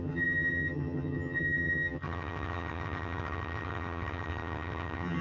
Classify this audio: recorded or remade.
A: remade